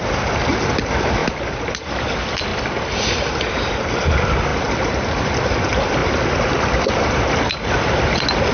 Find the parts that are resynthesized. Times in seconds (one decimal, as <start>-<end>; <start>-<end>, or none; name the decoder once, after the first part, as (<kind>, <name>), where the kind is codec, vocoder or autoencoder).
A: 4.5-5.4 (vocoder, BigVGAN v2)